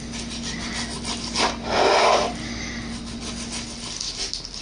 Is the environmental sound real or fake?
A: real